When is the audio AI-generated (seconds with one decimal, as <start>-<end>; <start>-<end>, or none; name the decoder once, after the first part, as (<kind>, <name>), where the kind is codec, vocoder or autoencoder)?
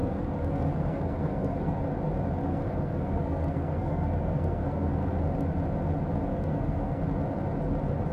0.0-1.8 (codec, SNAC); 2.5-5.2; 6.3-7.0